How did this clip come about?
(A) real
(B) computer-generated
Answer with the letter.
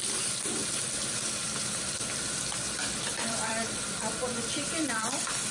B